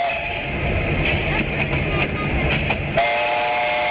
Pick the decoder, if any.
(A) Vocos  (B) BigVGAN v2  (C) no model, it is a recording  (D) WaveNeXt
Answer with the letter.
C